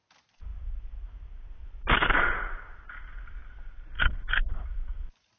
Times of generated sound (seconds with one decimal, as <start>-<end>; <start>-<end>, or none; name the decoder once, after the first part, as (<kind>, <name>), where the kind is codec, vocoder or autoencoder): none